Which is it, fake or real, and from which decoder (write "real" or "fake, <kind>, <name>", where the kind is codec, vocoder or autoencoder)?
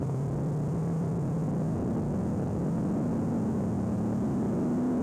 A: real